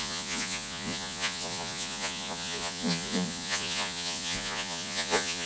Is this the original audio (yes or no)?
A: no